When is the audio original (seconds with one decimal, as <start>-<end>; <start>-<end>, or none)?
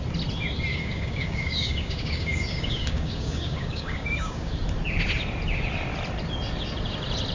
0.0-0.7; 4.5-7.3